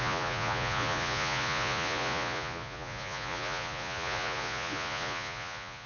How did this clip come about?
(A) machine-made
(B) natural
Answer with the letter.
A